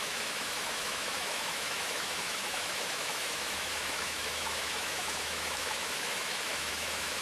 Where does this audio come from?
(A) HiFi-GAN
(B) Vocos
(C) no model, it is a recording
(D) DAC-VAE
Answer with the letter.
D